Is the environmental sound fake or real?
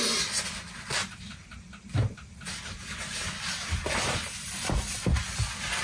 real